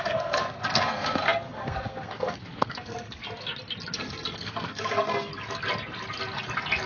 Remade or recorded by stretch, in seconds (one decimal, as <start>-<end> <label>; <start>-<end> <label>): 0.0-3.2 remade; 3.2-4.0 recorded; 4.0-5.3 remade; 5.3-6.9 recorded